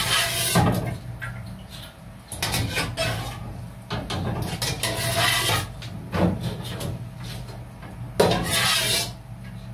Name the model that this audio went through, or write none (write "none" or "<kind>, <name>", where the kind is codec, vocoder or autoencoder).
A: none